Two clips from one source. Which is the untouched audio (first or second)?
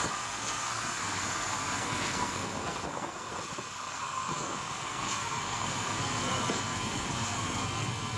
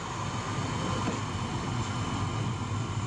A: second